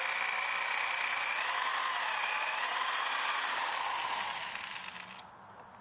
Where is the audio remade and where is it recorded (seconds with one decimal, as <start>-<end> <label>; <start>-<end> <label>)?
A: 0.0-5.8 recorded